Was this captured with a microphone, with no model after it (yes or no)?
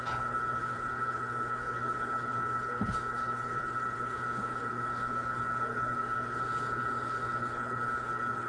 no